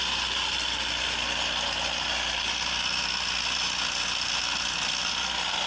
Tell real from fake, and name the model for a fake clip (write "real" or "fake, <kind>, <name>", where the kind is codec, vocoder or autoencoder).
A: real